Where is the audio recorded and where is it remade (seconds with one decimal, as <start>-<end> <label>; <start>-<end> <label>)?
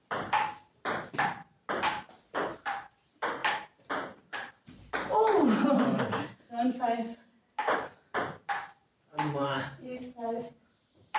0.0-11.2 remade